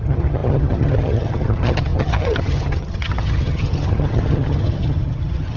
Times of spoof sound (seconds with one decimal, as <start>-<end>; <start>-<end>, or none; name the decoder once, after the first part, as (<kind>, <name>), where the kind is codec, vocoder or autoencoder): 0.0-5.6 (vocoder, HiFi-GAN)